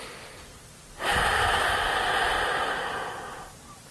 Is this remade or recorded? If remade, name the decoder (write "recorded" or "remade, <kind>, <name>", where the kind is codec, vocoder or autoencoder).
recorded